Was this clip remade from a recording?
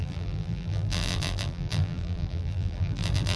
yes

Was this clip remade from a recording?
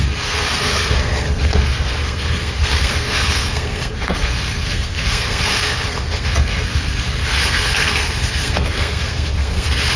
yes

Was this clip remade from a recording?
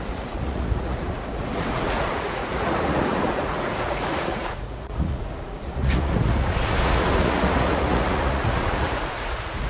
yes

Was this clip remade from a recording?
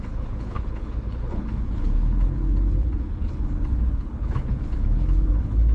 yes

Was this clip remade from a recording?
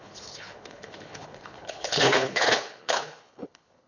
yes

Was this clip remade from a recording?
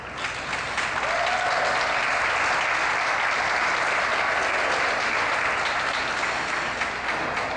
no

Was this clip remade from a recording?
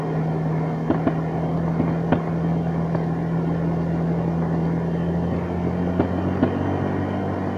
no